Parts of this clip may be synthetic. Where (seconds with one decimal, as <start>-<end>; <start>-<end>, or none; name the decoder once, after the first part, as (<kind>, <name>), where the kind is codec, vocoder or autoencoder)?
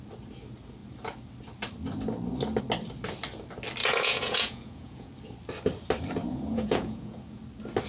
3.8-5.1 (vocoder, Vocos); 6.2-7.4